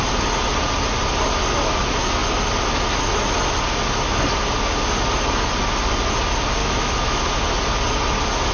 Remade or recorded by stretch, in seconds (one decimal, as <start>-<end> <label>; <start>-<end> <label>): 0.0-6.6 recorded; 6.6-7.2 remade; 7.2-8.5 recorded